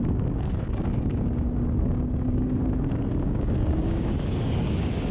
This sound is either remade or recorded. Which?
remade